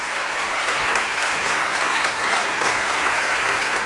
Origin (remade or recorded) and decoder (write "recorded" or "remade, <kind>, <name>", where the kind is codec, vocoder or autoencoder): remade, codec, SNAC